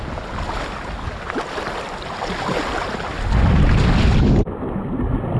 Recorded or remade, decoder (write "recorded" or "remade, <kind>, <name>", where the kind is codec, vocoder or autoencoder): recorded